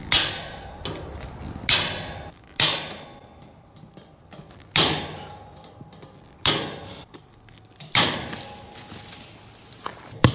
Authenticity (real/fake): real